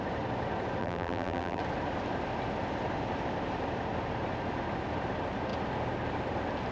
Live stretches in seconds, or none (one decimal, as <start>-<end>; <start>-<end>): 0.0-0.8; 1.6-6.7